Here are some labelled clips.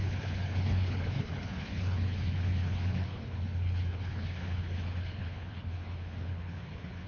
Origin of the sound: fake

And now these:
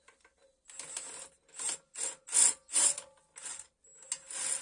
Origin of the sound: real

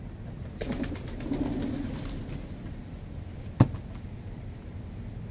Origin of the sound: real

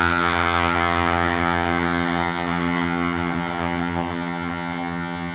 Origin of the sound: fake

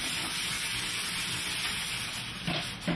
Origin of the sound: real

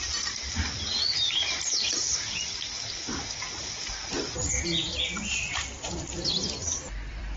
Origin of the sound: fake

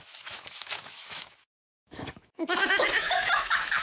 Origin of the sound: fake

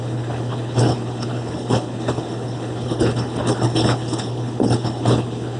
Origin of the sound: fake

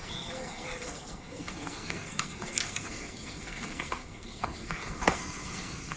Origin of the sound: fake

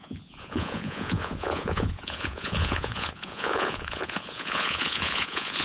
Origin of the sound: fake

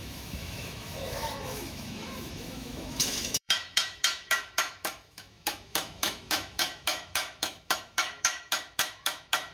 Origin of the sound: fake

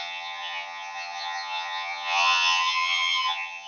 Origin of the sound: fake